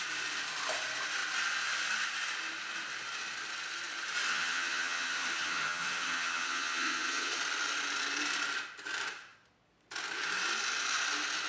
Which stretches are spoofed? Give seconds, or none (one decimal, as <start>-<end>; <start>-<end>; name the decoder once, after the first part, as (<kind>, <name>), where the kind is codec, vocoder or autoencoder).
4.3-7.4 (vocoder, HiFi-GAN)